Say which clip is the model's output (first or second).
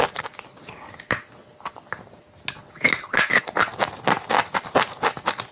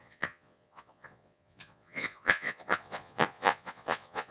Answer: second